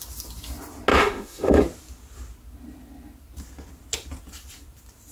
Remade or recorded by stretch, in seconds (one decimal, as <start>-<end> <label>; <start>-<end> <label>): 0.0-0.9 recorded; 0.9-1.6 remade; 1.6-5.1 recorded